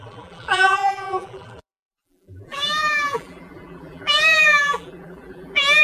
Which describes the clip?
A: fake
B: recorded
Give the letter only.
A